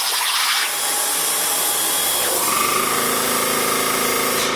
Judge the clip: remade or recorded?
recorded